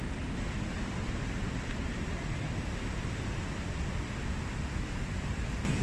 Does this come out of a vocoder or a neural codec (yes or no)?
no